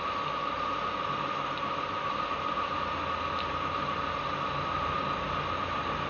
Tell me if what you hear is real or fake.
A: real